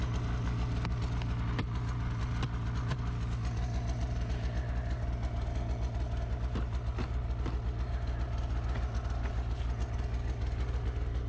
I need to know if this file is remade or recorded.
recorded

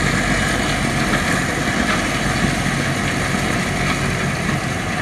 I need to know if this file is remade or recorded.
recorded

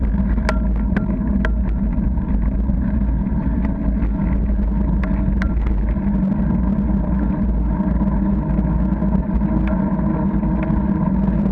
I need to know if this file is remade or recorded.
recorded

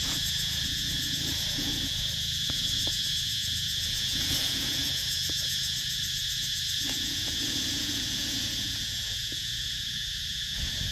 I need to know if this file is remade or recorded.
remade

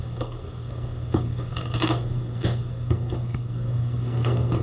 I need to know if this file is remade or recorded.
remade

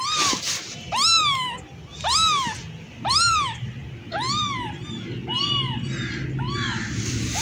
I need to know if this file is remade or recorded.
recorded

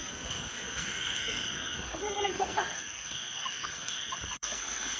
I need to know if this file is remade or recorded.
remade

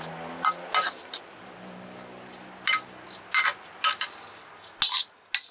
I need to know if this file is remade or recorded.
recorded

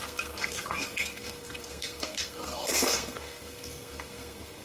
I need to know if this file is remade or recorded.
remade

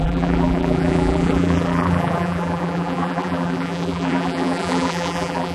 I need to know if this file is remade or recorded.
remade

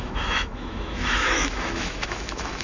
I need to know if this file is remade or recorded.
remade